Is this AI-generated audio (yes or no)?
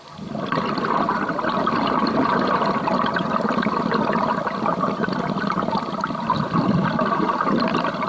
no